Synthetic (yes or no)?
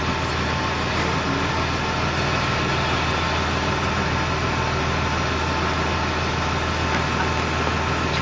no